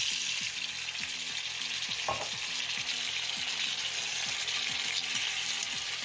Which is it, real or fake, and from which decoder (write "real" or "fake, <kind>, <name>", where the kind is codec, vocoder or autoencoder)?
real